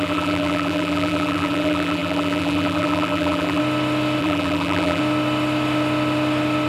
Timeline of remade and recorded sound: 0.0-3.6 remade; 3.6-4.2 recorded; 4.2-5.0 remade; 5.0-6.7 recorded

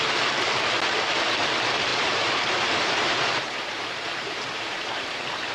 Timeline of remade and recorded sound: 0.0-1.9 recorded; 1.9-5.5 remade

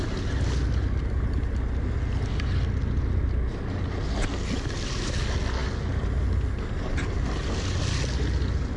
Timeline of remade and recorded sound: 0.0-8.8 recorded

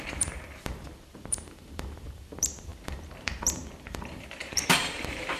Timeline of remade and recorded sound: 0.0-5.4 remade

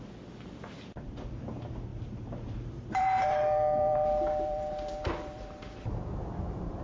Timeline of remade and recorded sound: 0.0-1.9 recorded; 1.9-6.0 remade; 6.0-6.8 recorded

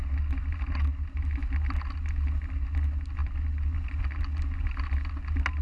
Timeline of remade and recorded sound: 0.0-5.6 recorded